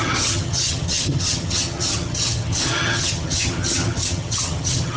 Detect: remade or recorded remade